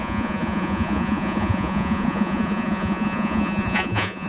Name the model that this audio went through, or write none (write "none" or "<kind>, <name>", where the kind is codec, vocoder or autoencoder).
vocoder, Vocos